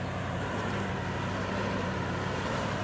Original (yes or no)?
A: no